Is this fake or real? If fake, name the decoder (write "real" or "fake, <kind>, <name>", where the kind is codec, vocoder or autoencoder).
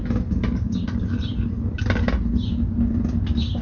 real